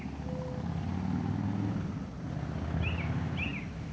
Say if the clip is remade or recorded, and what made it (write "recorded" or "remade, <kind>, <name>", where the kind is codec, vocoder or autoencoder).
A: recorded